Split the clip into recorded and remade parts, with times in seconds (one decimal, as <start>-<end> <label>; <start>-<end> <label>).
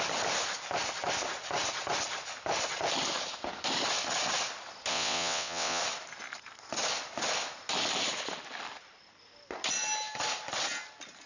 0.0-4.9 recorded; 4.9-5.8 remade; 5.8-11.3 recorded